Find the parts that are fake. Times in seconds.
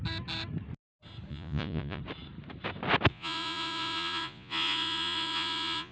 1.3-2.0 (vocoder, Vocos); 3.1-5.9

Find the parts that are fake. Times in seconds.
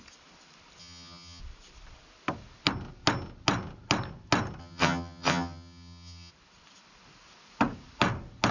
0.8-1.4 (vocoder, HiFi-GAN); 4.6-6.3